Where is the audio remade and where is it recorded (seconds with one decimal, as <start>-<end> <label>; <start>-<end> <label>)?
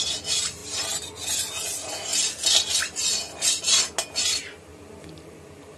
0.0-0.6 remade; 0.6-1.5 recorded; 1.5-2.1 remade; 2.1-4.3 recorded; 4.3-5.8 remade